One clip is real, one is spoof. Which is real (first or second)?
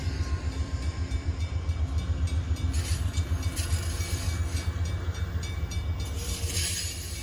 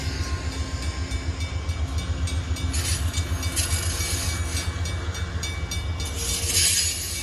second